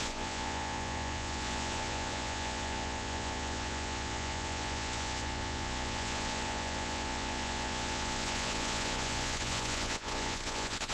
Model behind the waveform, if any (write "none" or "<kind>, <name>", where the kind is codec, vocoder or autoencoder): vocoder, Vocos